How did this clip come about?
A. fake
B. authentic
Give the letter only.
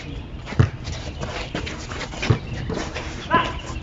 B